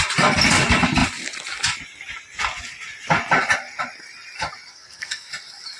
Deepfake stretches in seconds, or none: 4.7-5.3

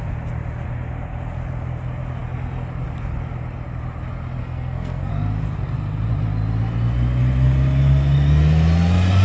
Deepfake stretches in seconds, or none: 4.4-5.1